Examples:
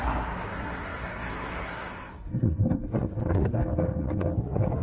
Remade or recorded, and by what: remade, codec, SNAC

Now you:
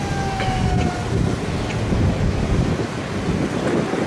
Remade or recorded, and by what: recorded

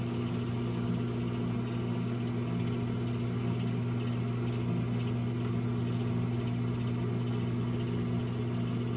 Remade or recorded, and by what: recorded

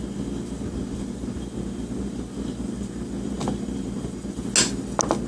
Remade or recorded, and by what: recorded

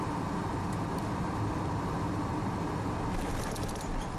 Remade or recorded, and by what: recorded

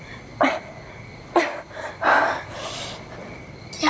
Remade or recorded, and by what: recorded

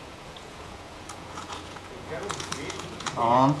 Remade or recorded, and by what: remade, vocoder, Vocos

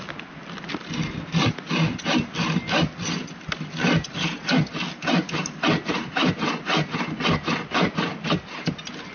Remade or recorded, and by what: recorded